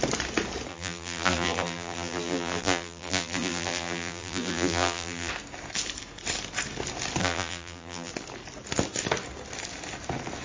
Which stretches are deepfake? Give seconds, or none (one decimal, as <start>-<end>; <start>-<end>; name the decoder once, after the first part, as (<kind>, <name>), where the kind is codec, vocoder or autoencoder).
0.7-5.3 (vocoder, BigVGAN v2); 7.2-8.1